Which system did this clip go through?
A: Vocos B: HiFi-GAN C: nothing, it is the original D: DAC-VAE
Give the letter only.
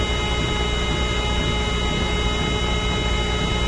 C